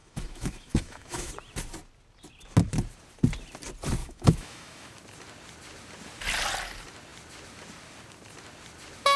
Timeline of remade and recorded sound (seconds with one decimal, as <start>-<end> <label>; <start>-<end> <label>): 0.0-1.3 remade; 1.3-4.0 recorded; 4.0-5.0 remade; 5.0-9.2 recorded